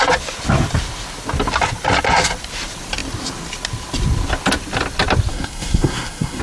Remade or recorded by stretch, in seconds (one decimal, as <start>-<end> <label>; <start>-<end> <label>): 0.0-5.3 recorded; 5.3-6.4 remade